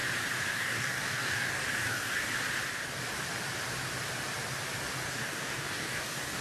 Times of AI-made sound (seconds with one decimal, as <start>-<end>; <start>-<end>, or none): 0.5-2.3; 5.1-6.4